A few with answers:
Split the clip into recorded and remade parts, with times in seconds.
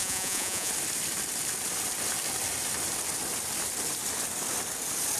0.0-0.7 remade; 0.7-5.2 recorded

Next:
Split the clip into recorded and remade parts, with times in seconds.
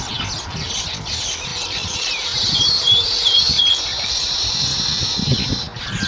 0.0-1.5 recorded; 1.5-5.2 remade; 5.2-6.1 recorded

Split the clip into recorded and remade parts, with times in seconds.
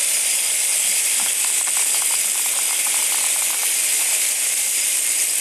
0.0-5.4 recorded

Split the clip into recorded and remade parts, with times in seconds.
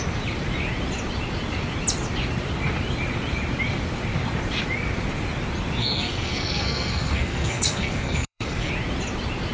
0.0-5.8 recorded; 5.8-8.7 remade; 8.7-9.5 recorded